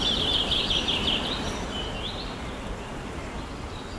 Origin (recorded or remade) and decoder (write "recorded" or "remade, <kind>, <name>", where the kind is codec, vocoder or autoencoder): recorded